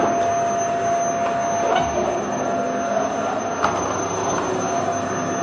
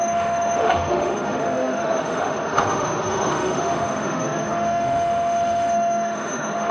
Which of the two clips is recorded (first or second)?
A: first